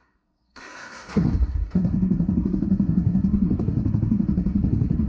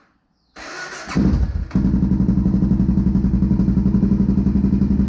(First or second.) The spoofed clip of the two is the first